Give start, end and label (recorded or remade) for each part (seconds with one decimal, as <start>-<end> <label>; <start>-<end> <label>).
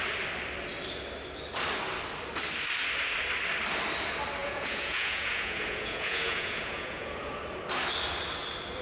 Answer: 0.0-4.4 recorded; 4.4-7.3 remade; 7.3-8.8 recorded